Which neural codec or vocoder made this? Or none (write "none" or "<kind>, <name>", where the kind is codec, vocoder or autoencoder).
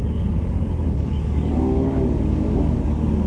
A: codec, DAC